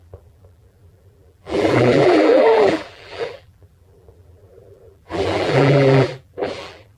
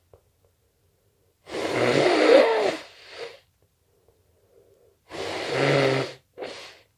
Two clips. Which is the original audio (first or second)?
second